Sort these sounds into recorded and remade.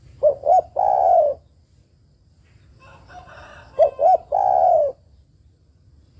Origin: recorded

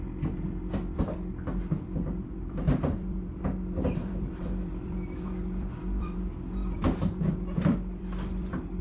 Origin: remade